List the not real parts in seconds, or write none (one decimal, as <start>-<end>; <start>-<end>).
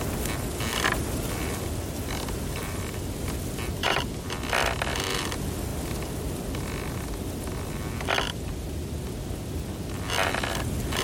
2.6-3.3; 3.8-4.5